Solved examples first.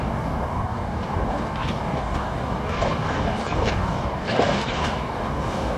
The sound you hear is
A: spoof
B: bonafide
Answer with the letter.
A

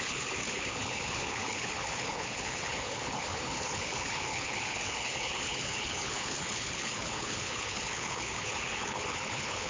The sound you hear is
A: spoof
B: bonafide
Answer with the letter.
A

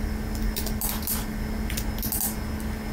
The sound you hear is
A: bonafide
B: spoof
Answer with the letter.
A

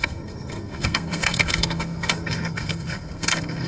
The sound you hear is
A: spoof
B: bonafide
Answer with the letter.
A